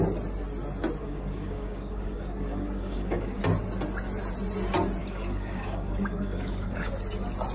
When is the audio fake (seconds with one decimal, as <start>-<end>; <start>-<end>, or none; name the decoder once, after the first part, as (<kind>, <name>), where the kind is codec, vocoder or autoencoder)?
1.0-3.4 (codec, DAC); 5.0-6.9